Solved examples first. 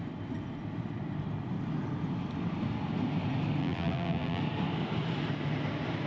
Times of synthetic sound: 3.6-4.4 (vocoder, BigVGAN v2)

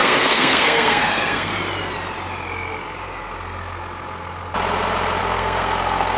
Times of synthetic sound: 0.0-1.5 (codec, SNAC); 5.2-6.2

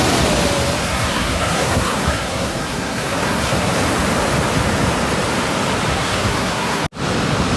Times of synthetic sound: 0.8-3.7 (codec, SNAC); 5.9-6.8

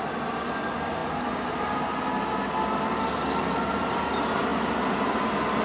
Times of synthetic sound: none

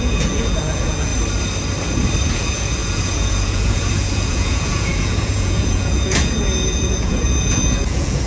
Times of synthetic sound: 0.0-1.1 (vocoder, Vocos); 2.3-8.3

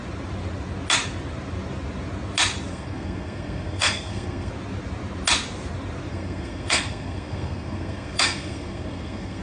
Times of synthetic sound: 2.7-4.5 (codec, SNAC); 6.1-9.4